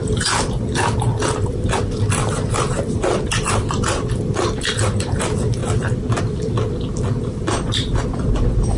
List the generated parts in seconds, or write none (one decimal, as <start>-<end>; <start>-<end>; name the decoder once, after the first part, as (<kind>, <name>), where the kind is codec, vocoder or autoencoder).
0.0-5.6 (vocoder, BigVGAN v2); 6.2-8.8